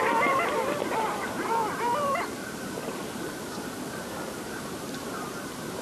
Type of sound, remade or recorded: remade